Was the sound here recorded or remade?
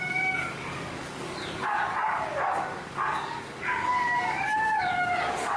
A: remade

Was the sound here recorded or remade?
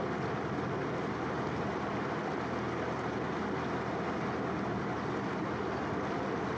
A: recorded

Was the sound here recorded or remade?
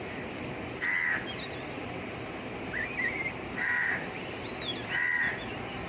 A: recorded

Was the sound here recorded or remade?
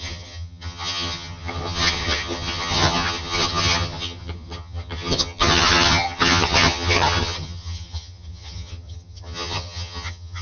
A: remade